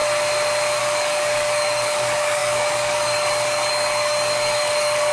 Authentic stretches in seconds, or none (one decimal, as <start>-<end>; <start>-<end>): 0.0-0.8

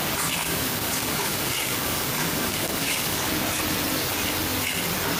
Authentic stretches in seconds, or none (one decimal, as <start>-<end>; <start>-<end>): 0.0-0.4; 3.3-5.2

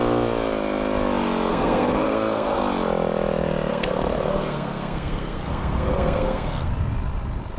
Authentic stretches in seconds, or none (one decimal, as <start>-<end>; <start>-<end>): 0.0-1.5; 2.6-3.7; 6.7-7.6

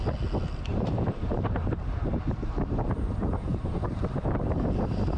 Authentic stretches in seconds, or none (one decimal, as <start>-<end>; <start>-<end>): 0.0-0.7; 2.1-3.5

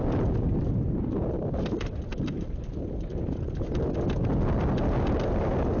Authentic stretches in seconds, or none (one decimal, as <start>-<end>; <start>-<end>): 0.0-5.8

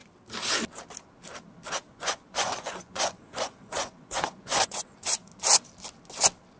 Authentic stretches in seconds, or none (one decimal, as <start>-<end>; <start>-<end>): 0.0-1.9; 5.3-6.6

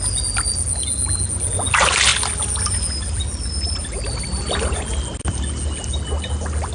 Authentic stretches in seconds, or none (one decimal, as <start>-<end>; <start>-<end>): 0.0-2.1; 4.8-6.7